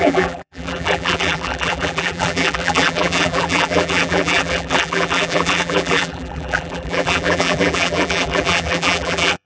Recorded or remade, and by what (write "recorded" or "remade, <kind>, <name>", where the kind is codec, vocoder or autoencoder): remade, vocoder, BigVGAN v2